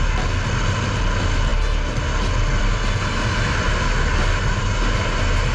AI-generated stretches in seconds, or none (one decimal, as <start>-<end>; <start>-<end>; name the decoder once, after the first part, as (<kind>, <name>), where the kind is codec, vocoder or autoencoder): none